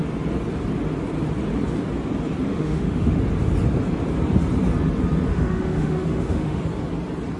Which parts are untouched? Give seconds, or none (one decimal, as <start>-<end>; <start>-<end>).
0.0-2.5; 3.2-5.3; 6.6-7.4